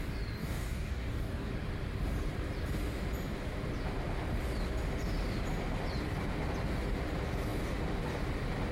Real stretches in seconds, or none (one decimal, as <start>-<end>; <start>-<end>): 0.0-0.4; 1.5-8.7